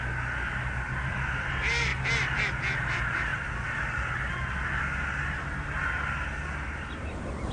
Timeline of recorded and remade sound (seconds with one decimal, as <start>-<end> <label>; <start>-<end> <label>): 0.0-7.5 recorded